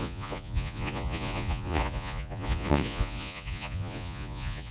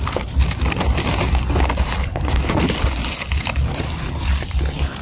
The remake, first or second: first